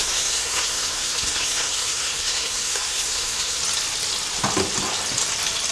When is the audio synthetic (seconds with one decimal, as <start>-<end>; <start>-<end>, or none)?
0.0-3.6